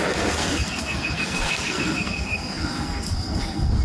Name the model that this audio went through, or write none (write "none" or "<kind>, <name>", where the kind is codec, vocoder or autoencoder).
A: codec, SNAC